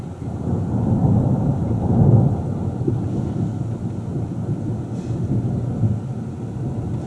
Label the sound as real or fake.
real